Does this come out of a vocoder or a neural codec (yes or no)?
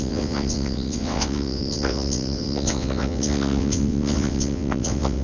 yes